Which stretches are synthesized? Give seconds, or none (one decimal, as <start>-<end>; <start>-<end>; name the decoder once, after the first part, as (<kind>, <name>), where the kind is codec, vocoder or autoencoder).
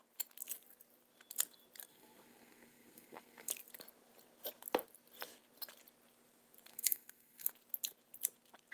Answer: 1.9-3.5 (codec, SNAC); 6.7-7.5